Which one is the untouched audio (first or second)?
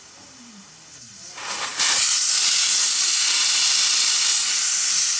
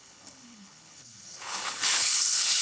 first